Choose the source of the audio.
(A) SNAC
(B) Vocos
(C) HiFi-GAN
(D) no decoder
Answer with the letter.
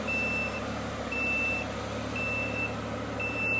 D